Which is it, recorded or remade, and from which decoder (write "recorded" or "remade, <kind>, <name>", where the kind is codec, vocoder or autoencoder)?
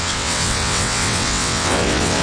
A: remade, vocoder, WaveNeXt